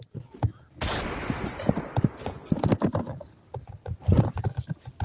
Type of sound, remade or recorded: recorded